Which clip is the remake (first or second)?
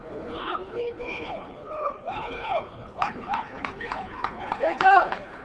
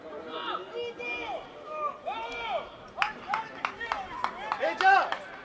first